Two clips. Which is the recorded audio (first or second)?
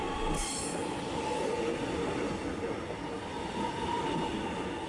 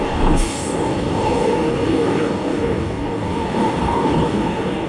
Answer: first